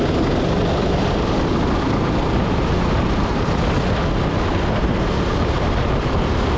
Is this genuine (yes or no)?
yes